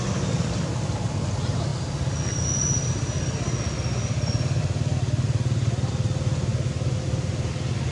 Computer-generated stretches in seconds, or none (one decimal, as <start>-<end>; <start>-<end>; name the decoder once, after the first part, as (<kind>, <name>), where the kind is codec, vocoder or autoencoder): none